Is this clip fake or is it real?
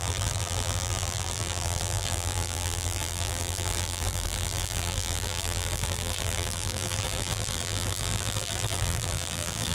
fake